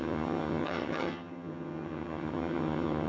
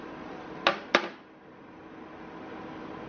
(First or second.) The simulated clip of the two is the first